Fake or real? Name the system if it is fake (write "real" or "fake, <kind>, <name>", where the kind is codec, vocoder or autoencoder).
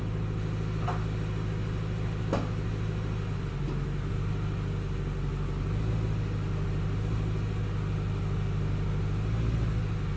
real